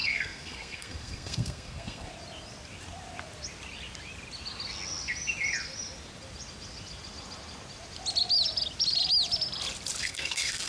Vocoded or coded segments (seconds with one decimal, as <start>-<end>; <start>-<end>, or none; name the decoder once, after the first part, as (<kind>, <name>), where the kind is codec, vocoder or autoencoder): 0.0-2.1 (codec, SNAC); 10.0-10.7

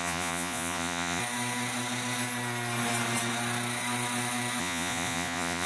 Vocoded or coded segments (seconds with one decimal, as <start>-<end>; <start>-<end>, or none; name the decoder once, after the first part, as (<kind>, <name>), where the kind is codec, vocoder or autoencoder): 0.0-1.2 (vocoder, Vocos); 4.6-5.7

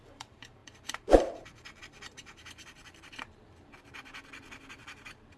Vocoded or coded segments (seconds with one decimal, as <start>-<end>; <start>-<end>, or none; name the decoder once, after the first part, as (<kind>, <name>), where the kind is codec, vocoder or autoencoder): 0.0-5.4 (vocoder, BigVGAN v2)

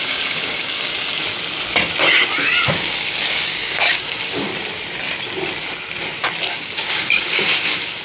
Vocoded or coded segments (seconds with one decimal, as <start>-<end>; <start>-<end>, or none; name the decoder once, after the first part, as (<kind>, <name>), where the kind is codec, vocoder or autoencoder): 0.0-0.9 (codec, DAC); 2.7-4.5; 6.5-8.0

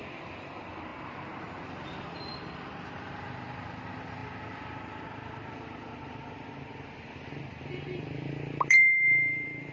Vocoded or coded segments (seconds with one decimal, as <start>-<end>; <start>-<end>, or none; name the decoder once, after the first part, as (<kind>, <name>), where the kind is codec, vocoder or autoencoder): 0.0-0.9 (vocoder, BigVGAN v2); 1.9-2.3; 3.0-9.7